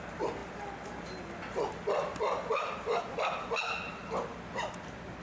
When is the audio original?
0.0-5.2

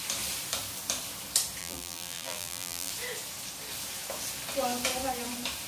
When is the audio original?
0.0-1.6; 2.9-5.7

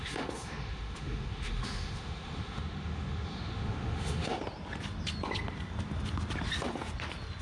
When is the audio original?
4.4-7.4

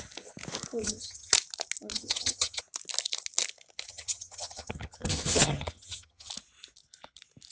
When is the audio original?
0.0-0.8; 1.3-1.9; 2.6-3.9; 6.3-7.5

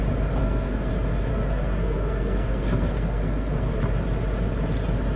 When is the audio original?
0.0-0.4; 0.9-1.3; 3.8-5.2

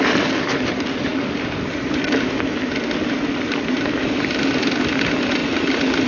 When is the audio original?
0.0-5.4